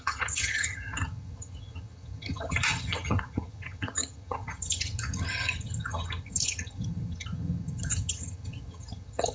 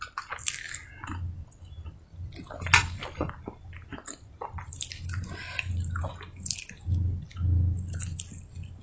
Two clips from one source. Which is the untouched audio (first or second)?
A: second